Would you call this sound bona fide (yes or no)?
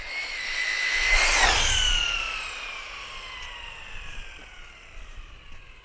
yes